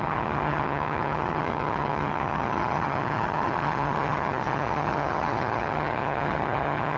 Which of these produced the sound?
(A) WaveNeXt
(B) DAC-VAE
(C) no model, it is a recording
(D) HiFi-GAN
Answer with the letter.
D